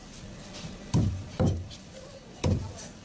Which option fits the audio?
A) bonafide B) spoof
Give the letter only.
B